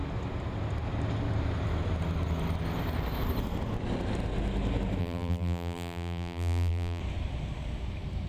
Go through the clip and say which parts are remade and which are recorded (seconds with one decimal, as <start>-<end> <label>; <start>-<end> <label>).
0.0-5.0 recorded; 5.0-7.0 remade; 7.0-8.3 recorded